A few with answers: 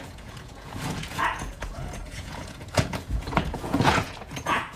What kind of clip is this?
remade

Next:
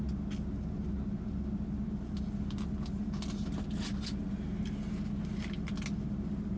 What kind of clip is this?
recorded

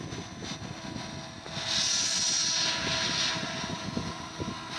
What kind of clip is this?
recorded